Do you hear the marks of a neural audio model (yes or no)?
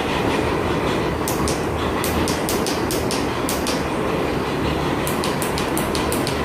no